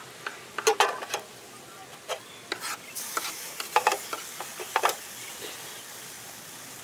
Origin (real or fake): real